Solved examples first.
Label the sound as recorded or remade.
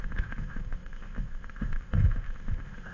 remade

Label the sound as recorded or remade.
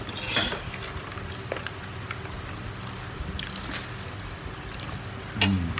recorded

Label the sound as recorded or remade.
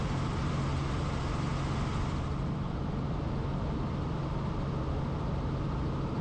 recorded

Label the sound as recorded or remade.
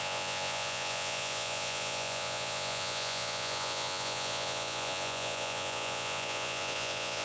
remade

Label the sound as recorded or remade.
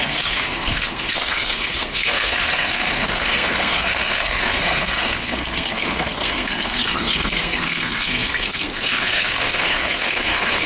remade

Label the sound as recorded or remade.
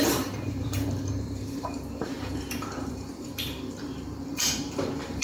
remade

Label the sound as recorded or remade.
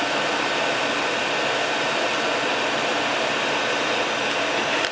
recorded